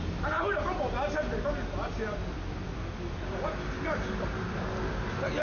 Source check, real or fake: real